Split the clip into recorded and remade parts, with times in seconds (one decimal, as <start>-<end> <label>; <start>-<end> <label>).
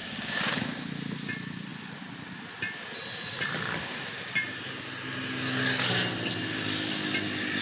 0.0-0.9 remade; 0.9-7.6 recorded